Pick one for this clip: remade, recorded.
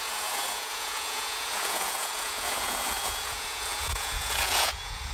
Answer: remade